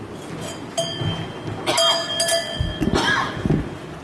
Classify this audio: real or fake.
real